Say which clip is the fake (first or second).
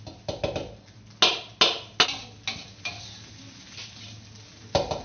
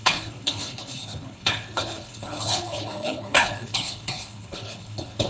second